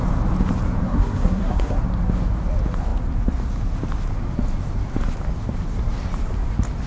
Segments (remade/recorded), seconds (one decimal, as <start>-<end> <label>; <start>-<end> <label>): 0.0-0.8 recorded; 0.8-1.8 remade; 1.8-6.9 recorded